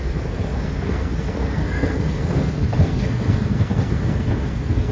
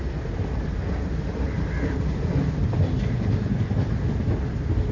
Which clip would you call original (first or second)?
second